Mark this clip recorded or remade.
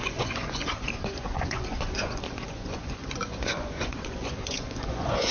remade